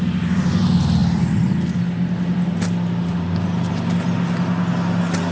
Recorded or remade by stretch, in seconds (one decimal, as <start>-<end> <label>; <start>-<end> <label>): 0.0-5.3 recorded

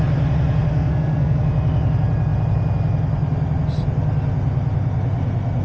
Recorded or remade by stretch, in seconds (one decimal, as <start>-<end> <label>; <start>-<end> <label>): 0.0-0.7 recorded; 0.7-1.4 remade; 1.4-5.6 recorded

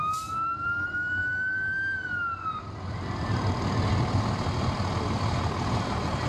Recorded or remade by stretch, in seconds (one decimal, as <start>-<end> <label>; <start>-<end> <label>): 0.0-6.3 recorded

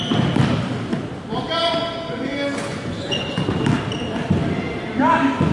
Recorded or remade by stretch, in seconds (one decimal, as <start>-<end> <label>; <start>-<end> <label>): 0.0-2.7 recorded; 2.7-3.4 remade; 3.4-5.5 recorded

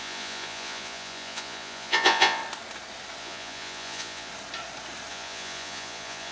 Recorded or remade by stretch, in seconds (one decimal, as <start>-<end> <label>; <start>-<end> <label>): 0.0-2.4 remade; 2.4-3.2 recorded; 3.2-4.3 remade; 4.3-5.1 recorded; 5.1-6.3 remade

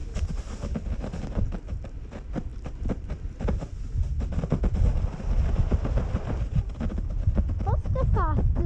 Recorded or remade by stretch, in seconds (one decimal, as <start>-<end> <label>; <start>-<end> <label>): 0.0-8.7 recorded

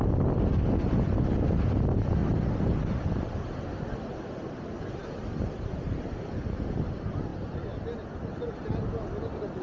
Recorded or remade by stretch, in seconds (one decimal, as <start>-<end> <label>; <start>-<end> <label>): 0.0-9.6 recorded